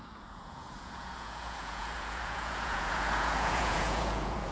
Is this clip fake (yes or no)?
yes